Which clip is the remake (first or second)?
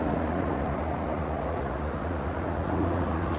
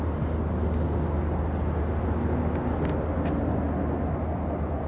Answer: first